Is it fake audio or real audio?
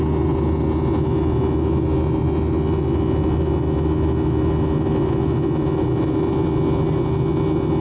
real